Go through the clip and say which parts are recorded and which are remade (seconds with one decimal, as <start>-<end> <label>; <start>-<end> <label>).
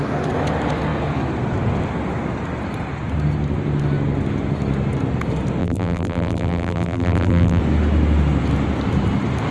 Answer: 0.0-5.6 recorded; 5.6-7.6 remade; 7.6-9.5 recorded